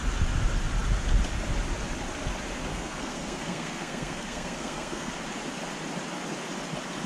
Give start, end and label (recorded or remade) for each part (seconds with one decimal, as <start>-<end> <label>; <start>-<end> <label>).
0.0-2.7 recorded; 2.7-5.1 remade; 5.1-7.1 recorded